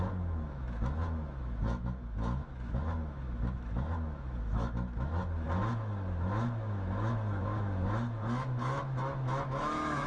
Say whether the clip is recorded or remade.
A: remade